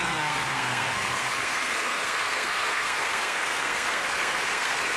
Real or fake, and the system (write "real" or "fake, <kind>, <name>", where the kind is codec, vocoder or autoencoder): fake, codec, SNAC